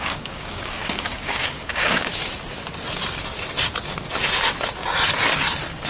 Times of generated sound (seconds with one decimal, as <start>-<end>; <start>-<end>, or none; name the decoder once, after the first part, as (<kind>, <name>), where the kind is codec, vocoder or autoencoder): 0.0-2.1 (codec, DAC)